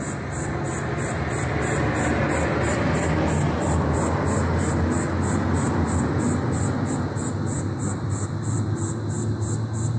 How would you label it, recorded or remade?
recorded